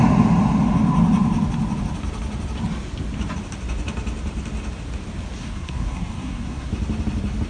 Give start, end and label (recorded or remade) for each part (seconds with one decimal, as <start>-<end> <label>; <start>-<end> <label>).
0.0-5.4 recorded; 5.4-6.7 remade; 6.7-7.5 recorded